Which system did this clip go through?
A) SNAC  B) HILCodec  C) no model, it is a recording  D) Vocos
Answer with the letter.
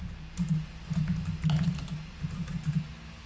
C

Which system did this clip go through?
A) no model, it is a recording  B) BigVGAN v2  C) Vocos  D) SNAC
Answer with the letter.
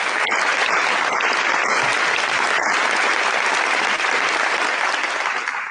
A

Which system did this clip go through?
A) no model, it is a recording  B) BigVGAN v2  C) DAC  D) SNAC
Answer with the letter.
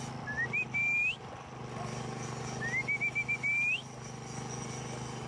A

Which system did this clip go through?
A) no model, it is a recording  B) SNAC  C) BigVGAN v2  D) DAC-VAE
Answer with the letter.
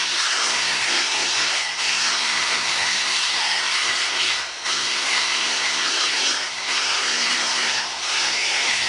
B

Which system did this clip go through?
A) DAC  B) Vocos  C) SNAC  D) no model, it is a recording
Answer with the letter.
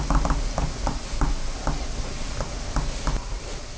D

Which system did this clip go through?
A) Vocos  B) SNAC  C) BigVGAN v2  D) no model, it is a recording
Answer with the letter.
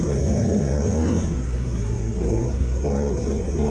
B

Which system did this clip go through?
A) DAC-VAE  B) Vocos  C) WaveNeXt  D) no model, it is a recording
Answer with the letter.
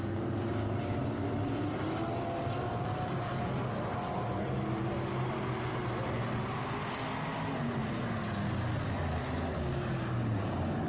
D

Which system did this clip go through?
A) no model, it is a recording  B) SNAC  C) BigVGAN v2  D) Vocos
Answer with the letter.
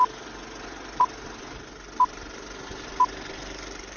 A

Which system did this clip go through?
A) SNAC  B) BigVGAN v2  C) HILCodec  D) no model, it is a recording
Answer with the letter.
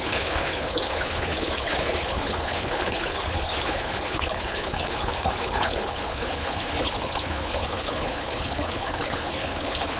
C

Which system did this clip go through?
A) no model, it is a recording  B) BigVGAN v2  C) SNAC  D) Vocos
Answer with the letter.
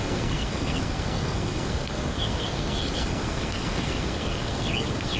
C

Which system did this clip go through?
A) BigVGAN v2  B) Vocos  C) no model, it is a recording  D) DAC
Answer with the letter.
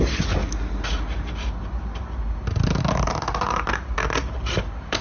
C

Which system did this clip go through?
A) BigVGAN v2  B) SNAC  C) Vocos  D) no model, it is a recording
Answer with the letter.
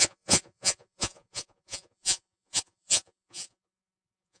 C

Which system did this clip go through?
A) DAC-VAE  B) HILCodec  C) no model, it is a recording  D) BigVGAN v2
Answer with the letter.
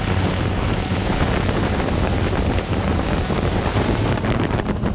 D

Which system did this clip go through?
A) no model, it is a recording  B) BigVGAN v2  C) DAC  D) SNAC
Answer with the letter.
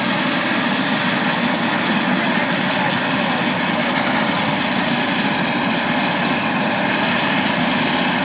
A